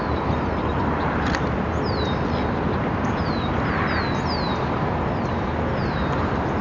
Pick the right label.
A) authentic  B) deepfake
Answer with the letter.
A